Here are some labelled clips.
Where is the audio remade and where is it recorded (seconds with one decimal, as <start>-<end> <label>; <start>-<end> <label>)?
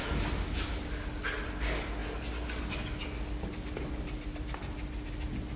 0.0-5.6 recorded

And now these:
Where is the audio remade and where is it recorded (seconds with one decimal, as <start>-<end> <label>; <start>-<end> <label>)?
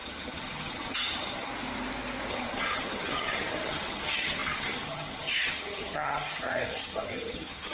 0.0-1.5 remade; 1.5-2.3 recorded; 2.3-7.7 remade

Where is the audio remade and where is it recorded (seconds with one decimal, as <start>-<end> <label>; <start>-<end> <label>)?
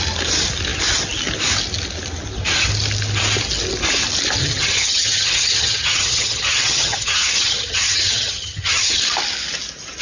0.0-4.4 recorded; 4.4-9.0 remade; 9.0-10.0 recorded